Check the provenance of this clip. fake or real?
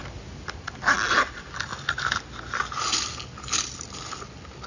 real